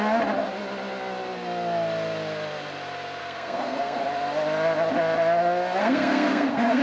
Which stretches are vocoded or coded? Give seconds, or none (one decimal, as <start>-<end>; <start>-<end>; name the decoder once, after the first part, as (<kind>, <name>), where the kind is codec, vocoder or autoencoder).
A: 3.2-4.0 (codec, SNAC); 5.8-6.8